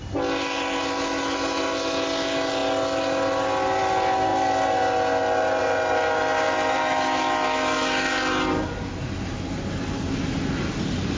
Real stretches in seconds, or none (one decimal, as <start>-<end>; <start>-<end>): 0.0-11.2